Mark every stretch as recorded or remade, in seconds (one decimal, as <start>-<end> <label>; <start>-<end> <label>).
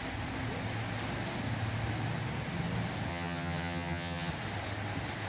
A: 0.0-3.1 recorded; 3.1-4.3 remade; 4.3-5.3 recorded